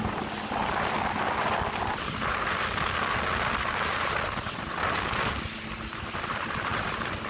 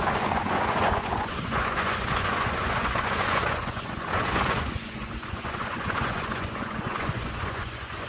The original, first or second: first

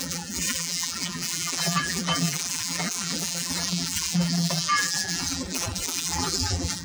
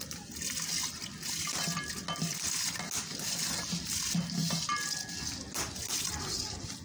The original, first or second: second